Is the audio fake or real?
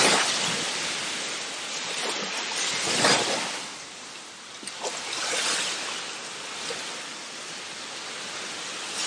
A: real